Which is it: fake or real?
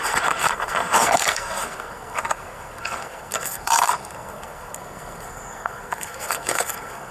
fake